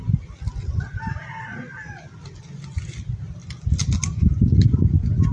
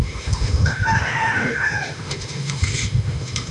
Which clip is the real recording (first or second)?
first